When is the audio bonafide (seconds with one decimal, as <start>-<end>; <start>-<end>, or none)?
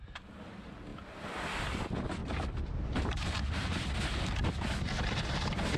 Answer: 0.0-2.2; 3.9-5.8